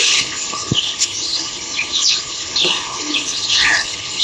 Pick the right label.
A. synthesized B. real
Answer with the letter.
A